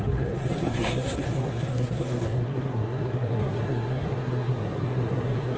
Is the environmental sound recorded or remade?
remade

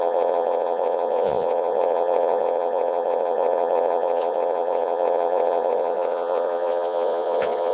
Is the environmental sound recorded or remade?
remade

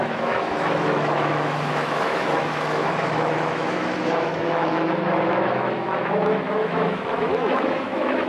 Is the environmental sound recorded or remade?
remade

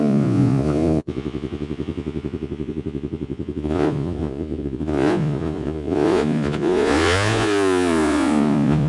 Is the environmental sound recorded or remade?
remade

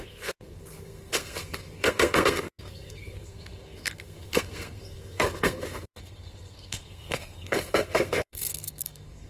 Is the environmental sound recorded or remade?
remade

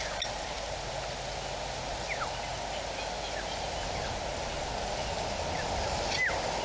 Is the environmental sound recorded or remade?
recorded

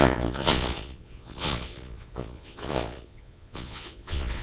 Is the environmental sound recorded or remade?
remade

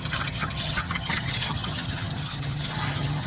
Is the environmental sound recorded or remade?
remade